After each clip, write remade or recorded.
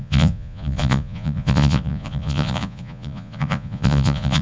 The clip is remade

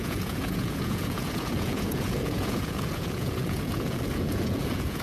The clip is remade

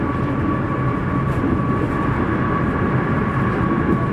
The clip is recorded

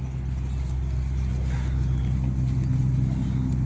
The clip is recorded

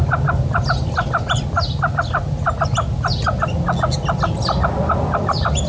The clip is recorded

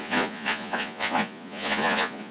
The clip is remade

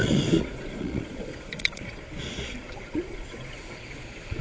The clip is remade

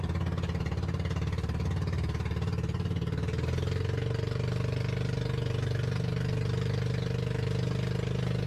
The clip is recorded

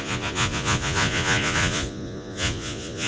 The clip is remade